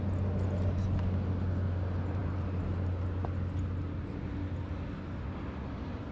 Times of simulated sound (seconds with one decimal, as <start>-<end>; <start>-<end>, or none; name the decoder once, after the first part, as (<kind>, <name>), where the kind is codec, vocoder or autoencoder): none